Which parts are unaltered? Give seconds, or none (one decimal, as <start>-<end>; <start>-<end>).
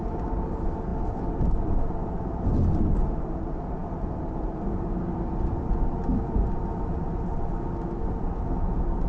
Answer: 0.0-9.1